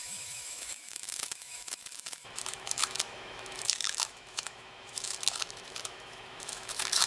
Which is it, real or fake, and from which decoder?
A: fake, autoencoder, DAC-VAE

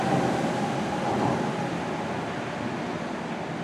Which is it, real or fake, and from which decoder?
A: real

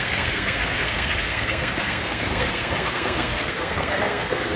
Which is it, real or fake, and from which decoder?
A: fake, codec, SNAC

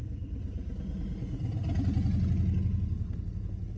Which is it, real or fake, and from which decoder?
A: real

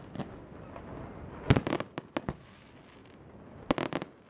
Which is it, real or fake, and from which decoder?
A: real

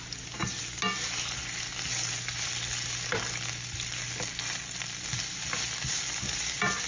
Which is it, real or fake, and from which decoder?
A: real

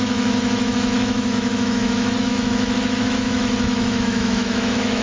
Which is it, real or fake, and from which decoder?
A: fake, autoencoder, DAC-VAE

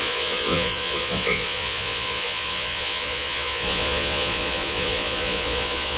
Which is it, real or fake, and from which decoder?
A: fake, vocoder, Vocos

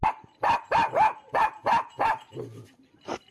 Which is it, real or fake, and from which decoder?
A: real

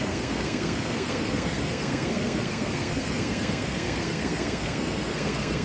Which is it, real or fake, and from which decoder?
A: fake, codec, SNAC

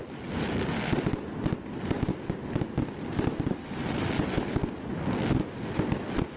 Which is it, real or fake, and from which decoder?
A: real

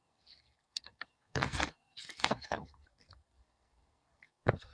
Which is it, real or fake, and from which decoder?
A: fake, codec, SNAC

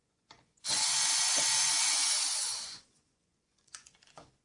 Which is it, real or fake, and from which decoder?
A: fake, vocoder, Vocos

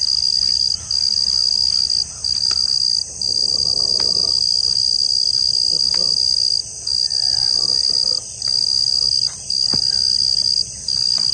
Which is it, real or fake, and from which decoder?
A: real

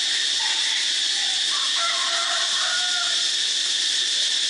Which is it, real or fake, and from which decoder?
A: real